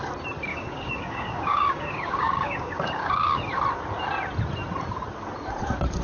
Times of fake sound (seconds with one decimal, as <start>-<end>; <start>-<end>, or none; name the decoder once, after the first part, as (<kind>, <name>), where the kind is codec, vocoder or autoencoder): 0.5-3.4 (codec, DAC)